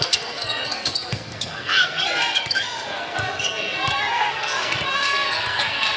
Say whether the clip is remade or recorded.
remade